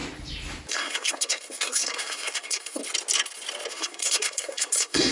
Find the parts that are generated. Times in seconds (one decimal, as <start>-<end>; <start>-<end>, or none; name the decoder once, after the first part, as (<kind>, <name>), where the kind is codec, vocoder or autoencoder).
0.7-2.8 (codec, SNAC); 3.7-5.1